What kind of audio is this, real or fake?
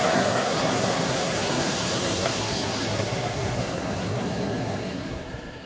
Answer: fake